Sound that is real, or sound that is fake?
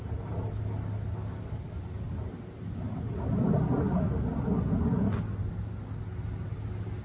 real